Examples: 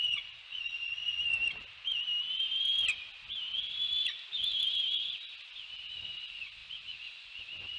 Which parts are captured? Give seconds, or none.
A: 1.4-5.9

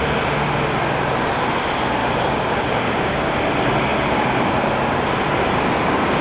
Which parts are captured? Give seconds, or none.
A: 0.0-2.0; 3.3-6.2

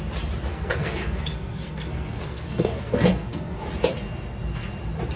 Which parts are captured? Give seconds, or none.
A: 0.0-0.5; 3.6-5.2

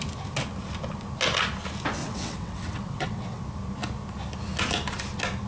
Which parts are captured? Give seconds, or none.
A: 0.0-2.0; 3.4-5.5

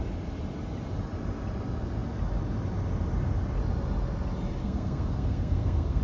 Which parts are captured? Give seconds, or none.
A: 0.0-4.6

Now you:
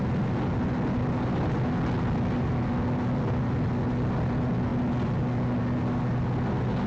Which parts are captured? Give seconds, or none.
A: 0.0-6.9